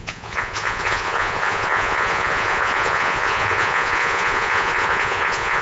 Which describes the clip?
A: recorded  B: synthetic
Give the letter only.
B